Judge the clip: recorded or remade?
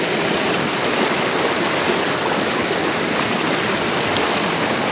recorded